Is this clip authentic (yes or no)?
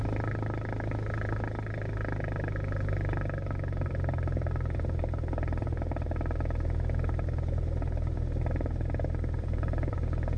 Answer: yes